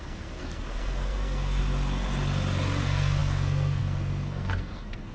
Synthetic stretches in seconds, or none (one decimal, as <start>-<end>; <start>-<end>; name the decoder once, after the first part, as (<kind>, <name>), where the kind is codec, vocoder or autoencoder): 0.0-1.6 (codec, SNAC); 2.8-5.1